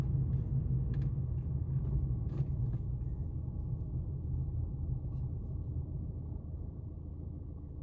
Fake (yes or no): no